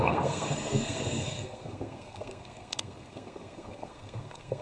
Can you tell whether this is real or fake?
fake